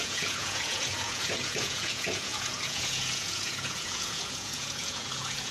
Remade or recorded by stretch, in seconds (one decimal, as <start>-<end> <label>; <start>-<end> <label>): 0.0-5.5 remade